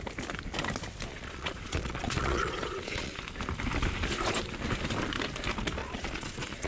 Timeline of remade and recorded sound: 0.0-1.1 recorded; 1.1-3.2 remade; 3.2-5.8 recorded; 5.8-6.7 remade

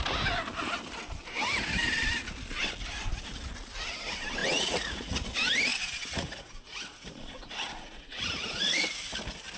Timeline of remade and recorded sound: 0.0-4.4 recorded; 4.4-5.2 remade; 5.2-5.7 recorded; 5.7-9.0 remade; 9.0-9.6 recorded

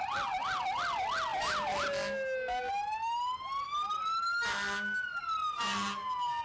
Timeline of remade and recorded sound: 0.0-6.4 recorded

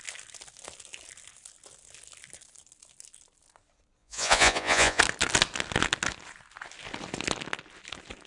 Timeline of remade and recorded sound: 0.0-4.0 recorded; 4.0-5.0 remade; 5.0-8.3 recorded

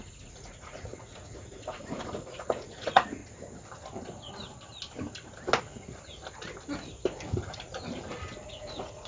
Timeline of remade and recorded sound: 0.0-3.2 remade; 3.2-8.5 recorded; 8.5-9.1 remade